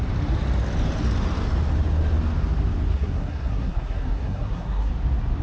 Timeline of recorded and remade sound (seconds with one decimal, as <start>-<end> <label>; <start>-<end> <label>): 0.0-2.9 recorded; 2.9-4.9 remade; 4.9-5.4 recorded